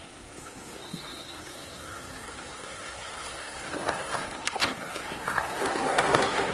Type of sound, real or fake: fake